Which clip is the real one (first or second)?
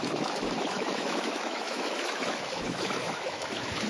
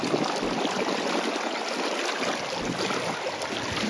second